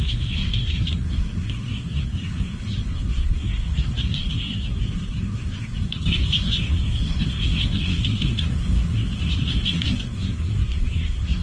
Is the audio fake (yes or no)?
yes